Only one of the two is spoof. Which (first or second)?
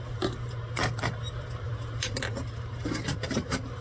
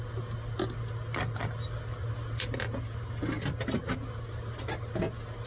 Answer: first